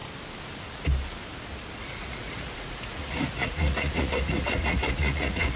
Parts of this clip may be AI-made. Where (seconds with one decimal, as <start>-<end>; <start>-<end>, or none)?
1.8-5.6